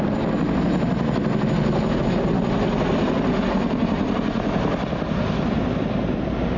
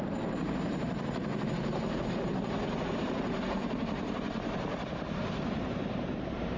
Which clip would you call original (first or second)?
first